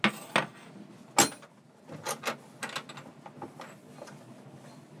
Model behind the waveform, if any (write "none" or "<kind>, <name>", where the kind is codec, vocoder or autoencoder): none